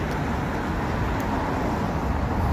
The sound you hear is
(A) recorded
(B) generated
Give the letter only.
A